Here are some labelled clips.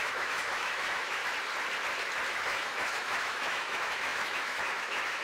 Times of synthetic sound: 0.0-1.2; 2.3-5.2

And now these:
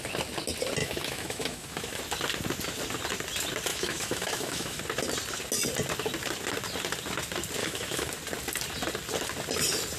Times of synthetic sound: 0.8-2.0; 3.7-4.8; 7.6-8.1

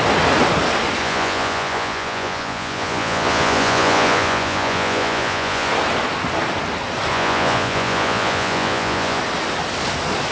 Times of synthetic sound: 1.0-5.7; 7.1-9.2

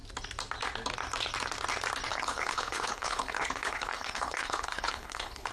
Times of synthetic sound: 2.1-5.5